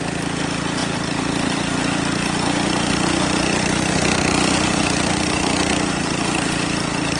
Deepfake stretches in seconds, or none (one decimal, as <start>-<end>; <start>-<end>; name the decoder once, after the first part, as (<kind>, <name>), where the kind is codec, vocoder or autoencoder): 0.8-5.1 (vocoder, BigVGAN v2)